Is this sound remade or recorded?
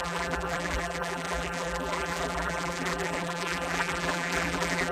remade